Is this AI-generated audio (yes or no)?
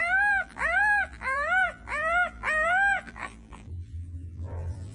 yes